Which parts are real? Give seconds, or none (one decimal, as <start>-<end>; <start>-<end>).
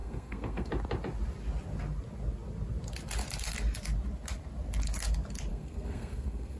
0.7-5.5